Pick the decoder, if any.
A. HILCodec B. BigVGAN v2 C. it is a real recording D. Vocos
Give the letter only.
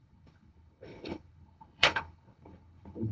A